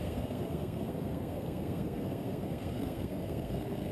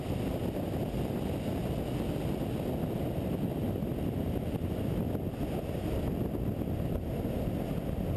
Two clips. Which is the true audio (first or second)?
second